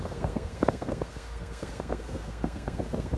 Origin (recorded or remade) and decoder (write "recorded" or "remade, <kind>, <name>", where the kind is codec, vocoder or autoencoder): remade, codec, SNAC